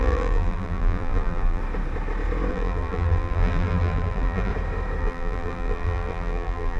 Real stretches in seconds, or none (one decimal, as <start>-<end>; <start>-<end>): 1.6-2.5; 4.5-5.0